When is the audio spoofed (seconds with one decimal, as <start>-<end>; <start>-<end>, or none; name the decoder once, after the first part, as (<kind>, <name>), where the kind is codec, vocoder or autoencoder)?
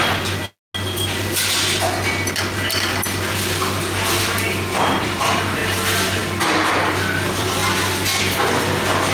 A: 0.0-0.4 (vocoder, BigVGAN v2); 4.2-5.6; 6.7-7.6; 8.2-9.1